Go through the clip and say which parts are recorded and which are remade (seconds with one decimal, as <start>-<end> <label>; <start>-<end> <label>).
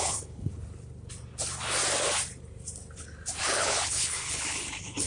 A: 0.0-0.5 remade; 0.5-3.4 recorded; 3.4-5.1 remade